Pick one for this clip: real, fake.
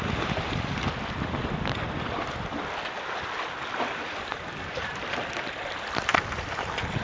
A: real